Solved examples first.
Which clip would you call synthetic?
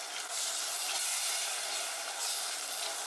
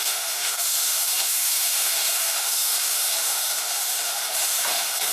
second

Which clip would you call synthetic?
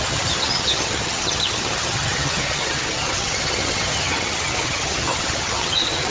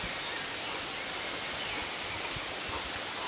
first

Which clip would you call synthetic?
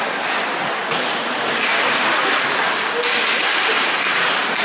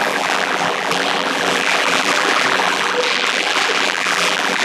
second